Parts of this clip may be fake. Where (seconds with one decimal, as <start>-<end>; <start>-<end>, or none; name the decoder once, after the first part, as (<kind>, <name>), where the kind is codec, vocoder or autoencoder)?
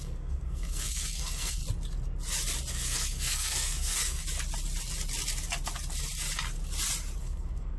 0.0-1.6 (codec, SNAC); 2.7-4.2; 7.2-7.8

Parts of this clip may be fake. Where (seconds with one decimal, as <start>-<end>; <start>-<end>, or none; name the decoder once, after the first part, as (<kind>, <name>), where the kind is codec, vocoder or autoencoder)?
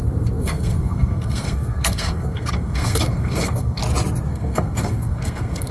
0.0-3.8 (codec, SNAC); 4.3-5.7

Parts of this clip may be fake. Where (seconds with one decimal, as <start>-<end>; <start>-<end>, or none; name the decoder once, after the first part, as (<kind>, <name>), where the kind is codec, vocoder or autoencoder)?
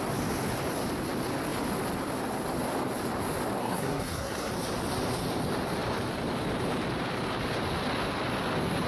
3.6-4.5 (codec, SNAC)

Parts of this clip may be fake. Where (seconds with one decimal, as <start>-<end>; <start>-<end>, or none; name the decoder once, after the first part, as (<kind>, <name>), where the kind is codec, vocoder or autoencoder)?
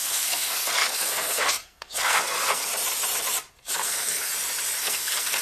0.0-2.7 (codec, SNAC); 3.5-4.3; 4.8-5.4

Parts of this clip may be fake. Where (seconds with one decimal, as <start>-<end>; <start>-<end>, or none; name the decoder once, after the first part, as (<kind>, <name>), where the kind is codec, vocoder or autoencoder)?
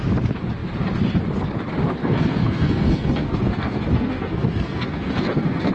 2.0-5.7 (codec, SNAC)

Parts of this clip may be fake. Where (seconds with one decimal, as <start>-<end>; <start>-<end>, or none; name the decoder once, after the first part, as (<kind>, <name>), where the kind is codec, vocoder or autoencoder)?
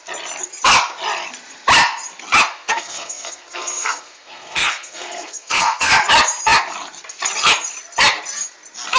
2.5-5.9 (codec, SNAC)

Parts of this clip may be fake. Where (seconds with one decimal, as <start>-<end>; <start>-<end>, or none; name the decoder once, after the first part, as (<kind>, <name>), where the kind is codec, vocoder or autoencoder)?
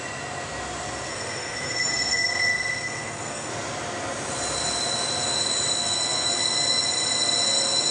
1.1-3.5 (codec, SNAC); 5.8-6.3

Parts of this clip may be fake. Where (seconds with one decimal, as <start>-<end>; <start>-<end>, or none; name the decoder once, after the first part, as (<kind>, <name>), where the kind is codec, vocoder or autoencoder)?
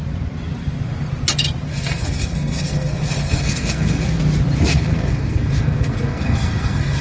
1.7-4.2 (codec, SNAC); 4.7-7.0